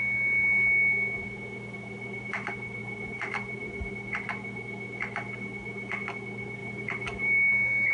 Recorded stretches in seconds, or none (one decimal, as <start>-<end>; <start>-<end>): 0.0-2.8; 3.9-6.6; 7.5-7.9